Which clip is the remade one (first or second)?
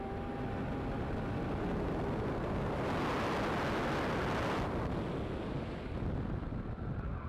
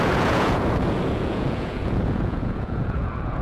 second